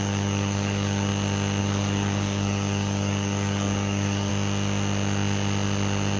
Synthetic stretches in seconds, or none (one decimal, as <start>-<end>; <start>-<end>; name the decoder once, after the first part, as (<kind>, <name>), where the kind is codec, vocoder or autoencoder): 0.0-1.1 (codec, DAC); 1.6-4.3